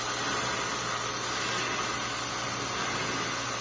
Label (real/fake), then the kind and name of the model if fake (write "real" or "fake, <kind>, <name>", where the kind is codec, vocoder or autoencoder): real